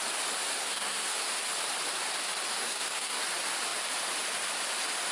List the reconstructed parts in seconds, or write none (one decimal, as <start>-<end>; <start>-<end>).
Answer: 0.6-1.2; 2.6-3.2